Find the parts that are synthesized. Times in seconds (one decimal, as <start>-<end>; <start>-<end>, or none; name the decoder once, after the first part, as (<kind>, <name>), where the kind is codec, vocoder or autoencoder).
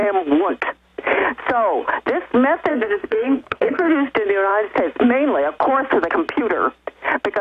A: 2.7-3.9 (codec, SNAC)